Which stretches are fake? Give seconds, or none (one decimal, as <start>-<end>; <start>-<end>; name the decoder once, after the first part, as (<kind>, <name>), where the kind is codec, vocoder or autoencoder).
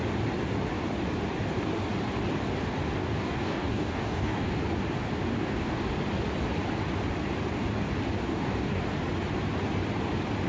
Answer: 3.0-4.5 (codec, DAC); 5.3-5.9; 8.2-8.8